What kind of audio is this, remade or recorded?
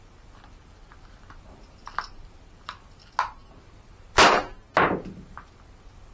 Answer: recorded